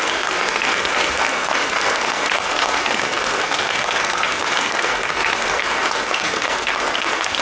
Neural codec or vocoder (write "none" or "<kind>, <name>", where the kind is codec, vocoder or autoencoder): codec, SNAC